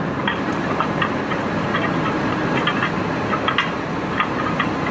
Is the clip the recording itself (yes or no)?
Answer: yes